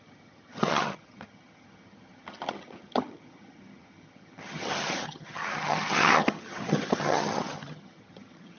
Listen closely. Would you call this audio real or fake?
fake